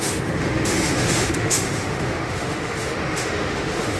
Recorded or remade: remade